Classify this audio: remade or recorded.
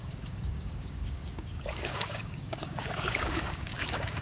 remade